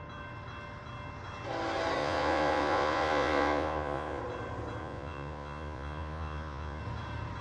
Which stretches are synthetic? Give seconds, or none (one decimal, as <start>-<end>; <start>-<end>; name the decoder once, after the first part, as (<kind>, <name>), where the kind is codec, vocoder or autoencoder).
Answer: 2.0-4.2 (vocoder, Vocos); 4.8-6.8